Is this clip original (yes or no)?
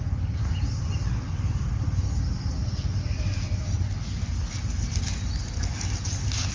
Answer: yes